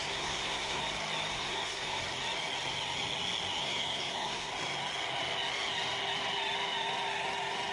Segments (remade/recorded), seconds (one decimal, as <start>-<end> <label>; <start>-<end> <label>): 0.0-0.8 remade; 0.8-1.3 recorded; 1.3-2.0 remade; 2.0-3.6 recorded; 3.6-4.5 remade; 4.5-7.7 recorded